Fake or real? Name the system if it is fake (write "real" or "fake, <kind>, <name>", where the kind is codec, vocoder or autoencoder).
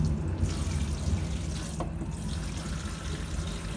real